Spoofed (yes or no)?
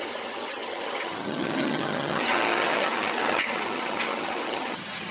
yes